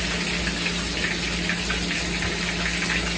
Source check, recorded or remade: recorded